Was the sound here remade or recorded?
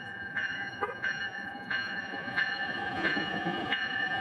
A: remade